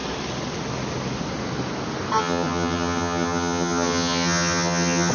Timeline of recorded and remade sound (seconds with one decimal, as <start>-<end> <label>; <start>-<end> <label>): 0.0-2.2 recorded; 2.2-5.1 remade